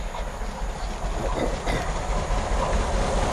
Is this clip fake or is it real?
real